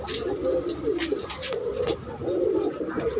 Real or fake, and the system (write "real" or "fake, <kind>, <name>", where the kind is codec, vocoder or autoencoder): real